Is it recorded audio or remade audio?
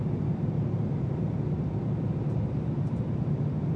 recorded